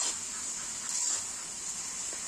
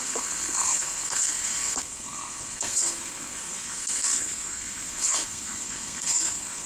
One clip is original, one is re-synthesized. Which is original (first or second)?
first